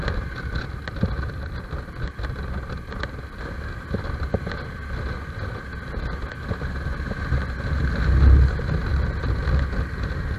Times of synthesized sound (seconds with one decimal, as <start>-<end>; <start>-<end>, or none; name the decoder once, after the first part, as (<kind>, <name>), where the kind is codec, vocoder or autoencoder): none